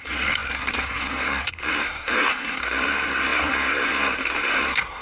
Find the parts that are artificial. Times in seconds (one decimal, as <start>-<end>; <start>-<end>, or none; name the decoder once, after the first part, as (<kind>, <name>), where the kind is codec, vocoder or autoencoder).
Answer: 0.0-5.0 (codec, SNAC)